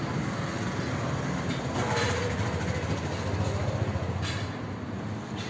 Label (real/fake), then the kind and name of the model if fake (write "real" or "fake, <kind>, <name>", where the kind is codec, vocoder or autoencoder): real